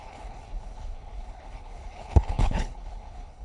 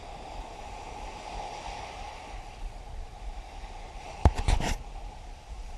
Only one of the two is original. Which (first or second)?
second